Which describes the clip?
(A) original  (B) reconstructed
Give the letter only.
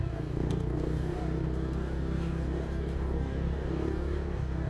B